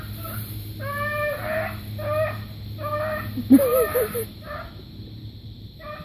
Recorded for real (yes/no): yes